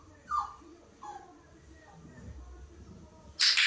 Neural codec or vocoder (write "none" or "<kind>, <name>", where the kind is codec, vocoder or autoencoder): none